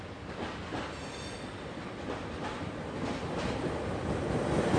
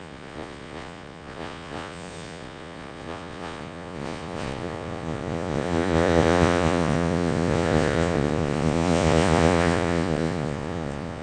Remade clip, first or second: second